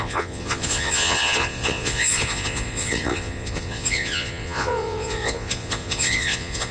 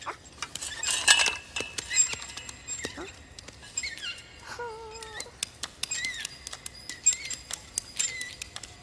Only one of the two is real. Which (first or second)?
second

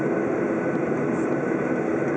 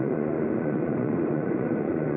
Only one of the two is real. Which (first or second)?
first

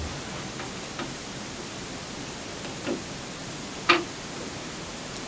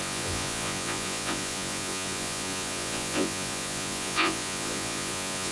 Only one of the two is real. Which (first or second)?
first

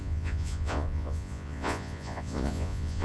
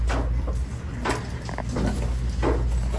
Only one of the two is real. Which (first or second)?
second